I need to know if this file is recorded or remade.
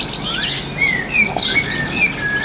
recorded